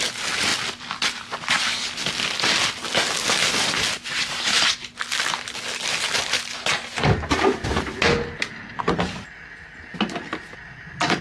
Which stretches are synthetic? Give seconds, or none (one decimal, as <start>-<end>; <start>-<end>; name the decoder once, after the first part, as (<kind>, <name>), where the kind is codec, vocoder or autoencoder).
none